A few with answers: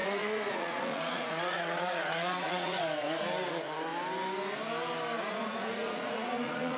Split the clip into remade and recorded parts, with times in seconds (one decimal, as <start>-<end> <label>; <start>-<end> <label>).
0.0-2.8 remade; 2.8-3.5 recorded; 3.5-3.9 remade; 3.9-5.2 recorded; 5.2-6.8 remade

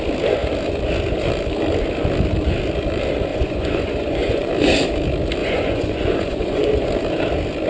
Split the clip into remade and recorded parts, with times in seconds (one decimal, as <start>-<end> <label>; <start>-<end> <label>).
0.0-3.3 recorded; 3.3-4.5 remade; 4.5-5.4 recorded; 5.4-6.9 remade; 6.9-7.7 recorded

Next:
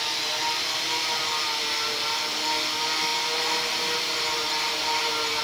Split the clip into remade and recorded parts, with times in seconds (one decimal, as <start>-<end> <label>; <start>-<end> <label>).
0.0-5.4 recorded

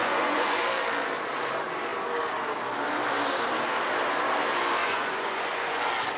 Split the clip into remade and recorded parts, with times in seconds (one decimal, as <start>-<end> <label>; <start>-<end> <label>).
0.0-0.6 remade; 0.6-4.8 recorded; 4.8-5.8 remade; 5.8-6.2 recorded

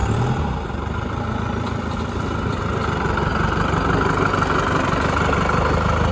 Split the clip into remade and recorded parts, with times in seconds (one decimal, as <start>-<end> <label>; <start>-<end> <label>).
0.0-6.1 recorded

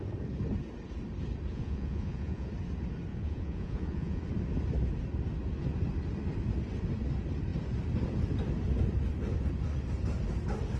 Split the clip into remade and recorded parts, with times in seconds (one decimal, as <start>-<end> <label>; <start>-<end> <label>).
0.0-1.5 recorded; 1.5-2.5 remade; 2.5-3.1 recorded; 3.1-4.2 remade; 4.2-10.8 recorded

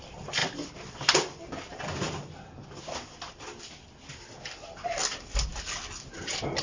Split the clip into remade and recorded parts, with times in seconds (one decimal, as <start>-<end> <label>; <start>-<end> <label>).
0.0-6.6 recorded

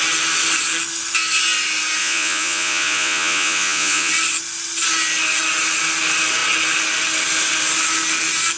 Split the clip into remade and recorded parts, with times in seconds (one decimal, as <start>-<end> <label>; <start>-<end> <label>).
0.0-2.0 recorded; 2.0-4.1 remade; 4.1-8.6 recorded